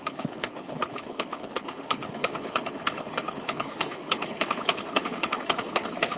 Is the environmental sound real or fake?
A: fake